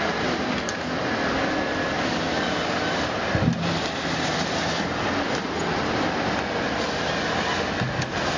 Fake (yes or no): no